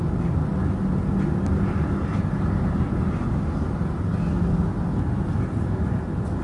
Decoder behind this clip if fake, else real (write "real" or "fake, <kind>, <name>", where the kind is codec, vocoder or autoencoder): real